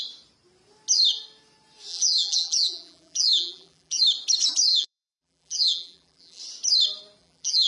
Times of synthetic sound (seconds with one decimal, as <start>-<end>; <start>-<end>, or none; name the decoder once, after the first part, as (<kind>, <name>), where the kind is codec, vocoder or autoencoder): 1.9-4.0 (vocoder, BigVGAN v2); 4.7-6.4; 7.2-7.7